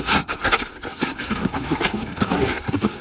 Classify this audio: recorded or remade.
remade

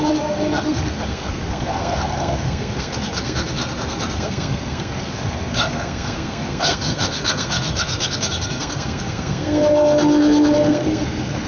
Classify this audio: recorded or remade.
remade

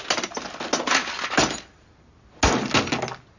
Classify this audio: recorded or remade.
recorded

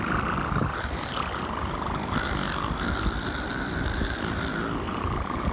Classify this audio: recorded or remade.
recorded